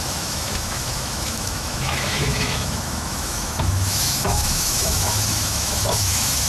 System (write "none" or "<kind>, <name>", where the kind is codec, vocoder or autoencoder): autoencoder, DAC-VAE